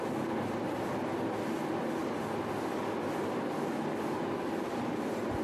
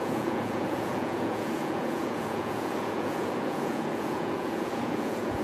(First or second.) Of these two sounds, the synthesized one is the second